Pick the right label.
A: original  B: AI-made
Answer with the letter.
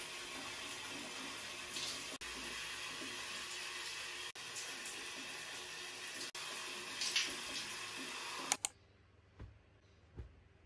A